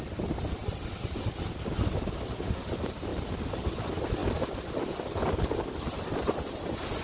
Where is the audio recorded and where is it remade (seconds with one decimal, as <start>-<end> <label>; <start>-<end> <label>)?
0.0-7.0 recorded

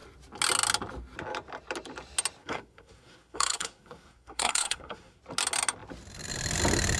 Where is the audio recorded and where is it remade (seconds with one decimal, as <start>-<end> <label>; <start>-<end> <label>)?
0.0-2.4 recorded; 2.4-5.2 remade; 5.2-7.0 recorded

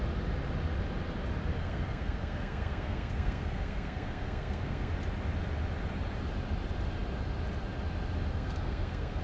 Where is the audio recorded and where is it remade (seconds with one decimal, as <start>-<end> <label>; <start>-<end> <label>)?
0.0-1.6 recorded; 1.6-4.9 remade; 4.9-8.3 recorded; 8.3-9.2 remade

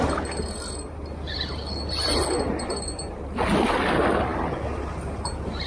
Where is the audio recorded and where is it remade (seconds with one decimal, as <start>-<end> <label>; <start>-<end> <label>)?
0.0-5.7 recorded